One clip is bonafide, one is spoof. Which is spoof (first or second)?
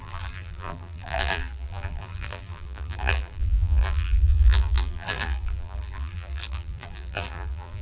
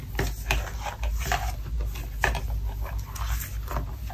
first